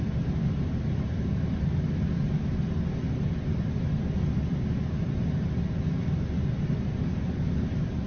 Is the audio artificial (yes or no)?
no